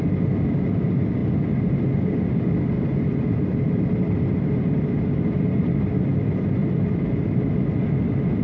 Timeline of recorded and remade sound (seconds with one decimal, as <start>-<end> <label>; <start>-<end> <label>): 0.0-1.2 recorded; 1.2-5.6 remade; 5.6-6.6 recorded; 6.6-7.5 remade; 7.5-8.4 recorded